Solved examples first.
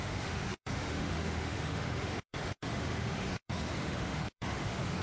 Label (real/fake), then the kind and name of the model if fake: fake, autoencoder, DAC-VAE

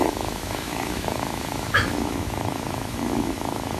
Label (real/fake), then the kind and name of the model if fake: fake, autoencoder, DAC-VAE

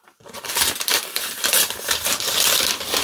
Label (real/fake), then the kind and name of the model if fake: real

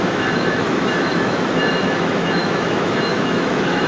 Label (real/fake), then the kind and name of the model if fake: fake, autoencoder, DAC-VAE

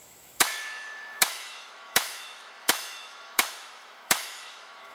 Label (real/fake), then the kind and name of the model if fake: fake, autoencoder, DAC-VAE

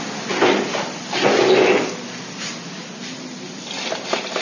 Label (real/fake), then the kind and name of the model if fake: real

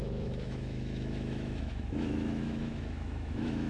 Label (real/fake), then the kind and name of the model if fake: fake, autoencoder, DAC-VAE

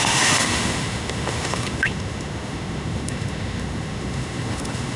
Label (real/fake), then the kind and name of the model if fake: fake, autoencoder, DAC-VAE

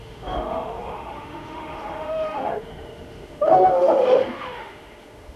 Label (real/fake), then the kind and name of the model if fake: fake, autoencoder, DAC-VAE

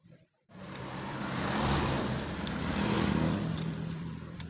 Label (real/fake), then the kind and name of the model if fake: real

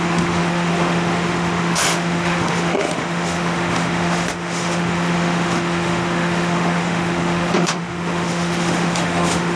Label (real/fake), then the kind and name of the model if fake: fake, autoencoder, DAC-VAE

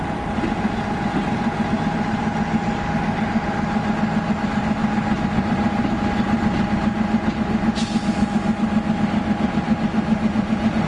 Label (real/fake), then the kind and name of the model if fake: real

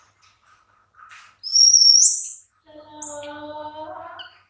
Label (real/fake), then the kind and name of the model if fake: real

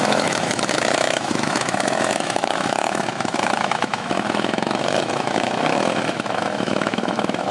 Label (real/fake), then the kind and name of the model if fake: fake, autoencoder, DAC-VAE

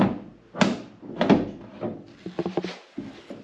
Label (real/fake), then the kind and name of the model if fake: real